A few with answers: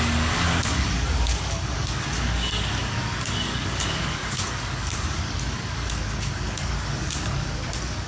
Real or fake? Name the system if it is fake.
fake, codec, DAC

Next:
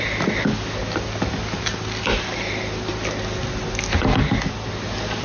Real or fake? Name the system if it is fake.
real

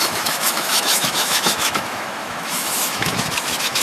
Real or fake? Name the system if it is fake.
fake, autoencoder, DAC-VAE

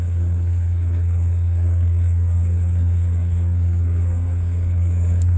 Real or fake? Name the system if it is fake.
fake, codec, SNAC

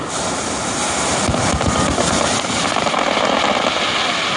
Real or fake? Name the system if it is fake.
real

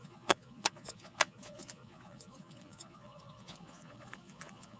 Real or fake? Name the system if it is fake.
fake, vocoder, Vocos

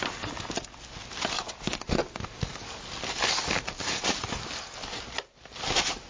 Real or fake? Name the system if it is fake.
real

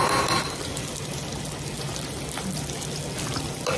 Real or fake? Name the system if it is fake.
real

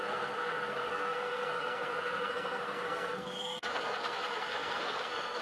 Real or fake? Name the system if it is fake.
fake, codec, SNAC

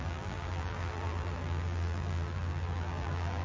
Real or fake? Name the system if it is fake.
fake, vocoder, BigVGAN v2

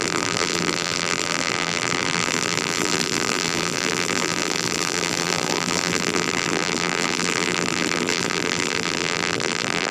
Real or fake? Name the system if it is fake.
fake, vocoder, BigVGAN v2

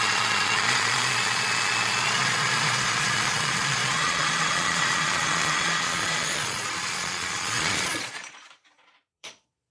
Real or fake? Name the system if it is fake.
fake, vocoder, Vocos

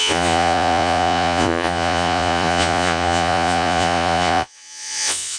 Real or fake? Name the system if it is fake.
fake, vocoder, Vocos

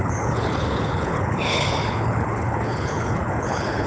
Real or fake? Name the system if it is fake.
fake, codec, HILCodec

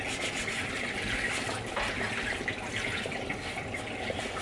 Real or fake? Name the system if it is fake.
real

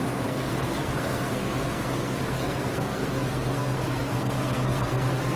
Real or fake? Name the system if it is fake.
fake, codec, SNAC